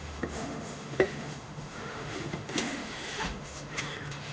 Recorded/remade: remade